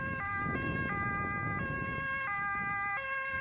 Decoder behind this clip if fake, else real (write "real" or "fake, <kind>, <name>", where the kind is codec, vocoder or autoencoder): real